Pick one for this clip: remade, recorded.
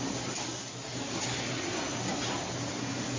recorded